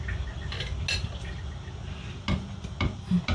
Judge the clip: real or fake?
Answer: real